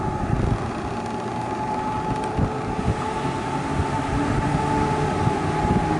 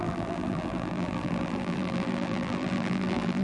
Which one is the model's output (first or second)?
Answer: second